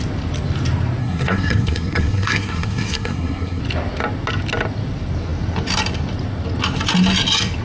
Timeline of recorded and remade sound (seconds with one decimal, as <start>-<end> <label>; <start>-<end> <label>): 0.0-1.0 recorded; 1.0-3.6 remade; 3.6-7.6 recorded

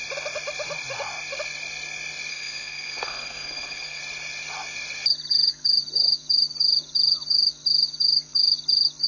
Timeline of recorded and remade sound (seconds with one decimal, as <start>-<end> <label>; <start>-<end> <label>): 0.0-2.3 recorded; 2.3-4.0 remade; 4.0-9.1 recorded

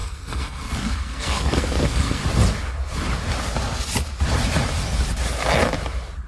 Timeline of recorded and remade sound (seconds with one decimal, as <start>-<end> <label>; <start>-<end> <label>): 0.0-2.2 remade; 2.2-6.3 recorded

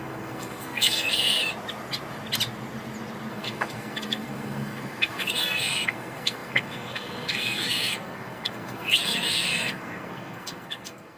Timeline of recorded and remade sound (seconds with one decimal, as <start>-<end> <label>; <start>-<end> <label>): 0.0-1.4 remade; 1.4-3.3 recorded; 3.3-11.2 remade

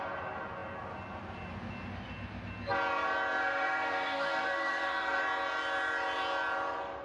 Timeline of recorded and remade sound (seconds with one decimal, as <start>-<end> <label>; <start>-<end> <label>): 0.0-3.4 recorded; 3.4-5.2 remade; 5.2-7.0 recorded